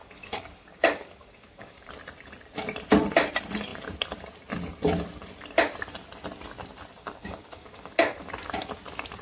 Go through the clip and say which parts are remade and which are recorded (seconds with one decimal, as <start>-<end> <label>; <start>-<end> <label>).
0.0-1.9 remade; 1.9-7.0 recorded; 7.0-8.3 remade; 8.3-9.2 recorded

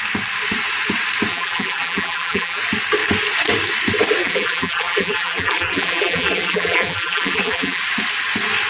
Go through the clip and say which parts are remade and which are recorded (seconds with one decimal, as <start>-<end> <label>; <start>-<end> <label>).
0.0-1.3 recorded; 1.3-2.6 remade; 2.6-4.2 recorded; 4.2-7.8 remade; 7.8-8.7 recorded

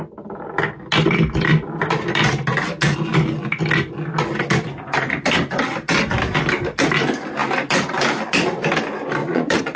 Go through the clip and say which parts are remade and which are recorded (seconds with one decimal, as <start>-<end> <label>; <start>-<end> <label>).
0.0-9.2 recorded; 9.2-9.8 remade

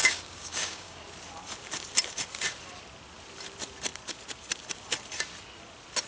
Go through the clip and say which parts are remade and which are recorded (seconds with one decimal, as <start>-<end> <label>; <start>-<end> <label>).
0.0-1.0 remade; 1.0-6.1 recorded

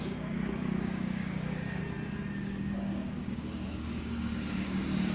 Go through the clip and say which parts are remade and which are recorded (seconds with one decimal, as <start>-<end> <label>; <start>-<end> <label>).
0.0-1.8 remade; 1.8-2.4 recorded; 2.4-5.1 remade

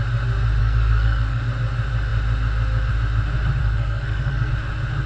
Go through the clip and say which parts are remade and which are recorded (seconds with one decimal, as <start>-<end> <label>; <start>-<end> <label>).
0.0-0.6 recorded; 0.6-1.4 remade; 1.4-3.6 recorded; 3.6-4.5 remade; 4.5-5.1 recorded

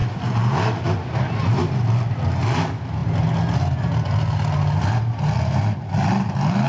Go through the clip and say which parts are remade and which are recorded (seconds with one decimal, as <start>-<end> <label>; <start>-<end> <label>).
0.0-6.7 recorded

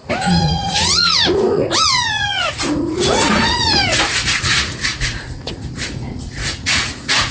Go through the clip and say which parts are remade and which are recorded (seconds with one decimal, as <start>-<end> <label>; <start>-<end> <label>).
0.0-7.3 remade